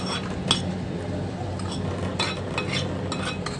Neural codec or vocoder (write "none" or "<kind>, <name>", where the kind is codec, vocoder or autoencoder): none